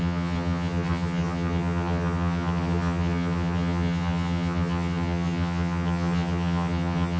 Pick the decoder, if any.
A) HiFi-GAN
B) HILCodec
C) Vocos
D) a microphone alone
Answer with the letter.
A